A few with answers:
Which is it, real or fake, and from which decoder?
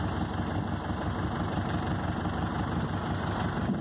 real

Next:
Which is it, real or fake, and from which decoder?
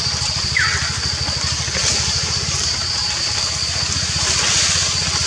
fake, vocoder, BigVGAN v2